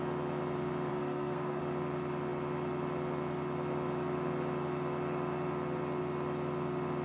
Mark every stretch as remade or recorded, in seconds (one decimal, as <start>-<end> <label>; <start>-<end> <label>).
0.0-0.9 recorded; 0.9-1.6 remade; 1.6-7.0 recorded